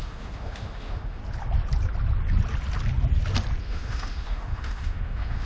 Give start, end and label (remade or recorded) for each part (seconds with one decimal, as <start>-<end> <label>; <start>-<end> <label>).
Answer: 0.0-1.2 remade; 1.2-3.6 recorded; 3.6-5.5 remade